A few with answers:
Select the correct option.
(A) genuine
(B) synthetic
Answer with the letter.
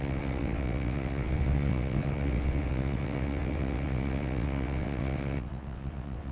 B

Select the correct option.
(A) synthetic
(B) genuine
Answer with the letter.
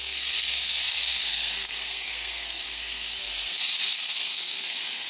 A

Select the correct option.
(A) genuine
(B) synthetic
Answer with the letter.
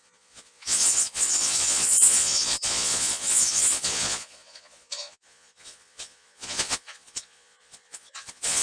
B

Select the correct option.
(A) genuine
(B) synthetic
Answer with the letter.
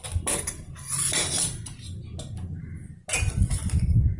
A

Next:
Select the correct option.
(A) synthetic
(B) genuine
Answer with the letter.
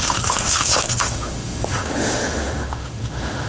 A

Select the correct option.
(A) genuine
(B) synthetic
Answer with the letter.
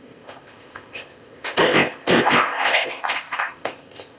B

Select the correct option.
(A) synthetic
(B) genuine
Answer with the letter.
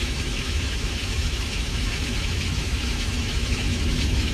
A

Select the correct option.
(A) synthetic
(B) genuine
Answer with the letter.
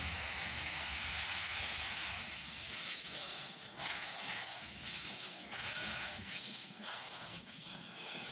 A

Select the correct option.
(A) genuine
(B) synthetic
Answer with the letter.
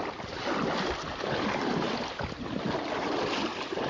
A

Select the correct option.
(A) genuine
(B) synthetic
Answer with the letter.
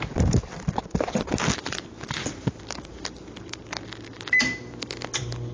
A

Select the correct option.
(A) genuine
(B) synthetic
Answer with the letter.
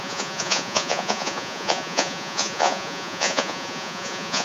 B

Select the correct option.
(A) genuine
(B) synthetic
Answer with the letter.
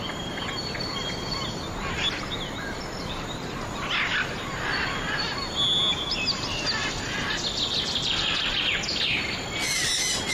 A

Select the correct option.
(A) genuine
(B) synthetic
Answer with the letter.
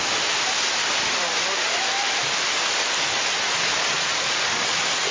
A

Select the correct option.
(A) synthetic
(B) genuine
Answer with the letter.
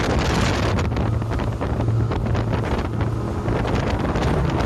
B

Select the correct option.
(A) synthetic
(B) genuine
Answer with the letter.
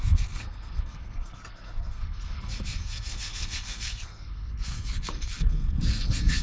A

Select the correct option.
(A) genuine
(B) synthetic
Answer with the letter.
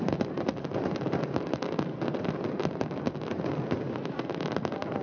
A